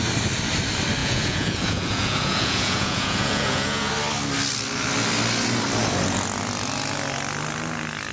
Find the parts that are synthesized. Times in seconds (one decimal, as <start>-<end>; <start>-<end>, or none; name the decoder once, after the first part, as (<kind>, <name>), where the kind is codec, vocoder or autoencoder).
1.0-3.9 (vocoder, Vocos)